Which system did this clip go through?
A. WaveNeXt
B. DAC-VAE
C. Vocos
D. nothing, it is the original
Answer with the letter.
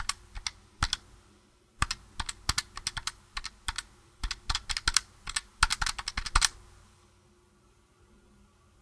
D